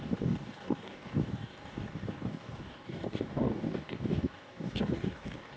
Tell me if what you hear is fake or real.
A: fake